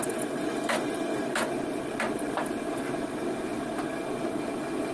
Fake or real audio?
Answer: real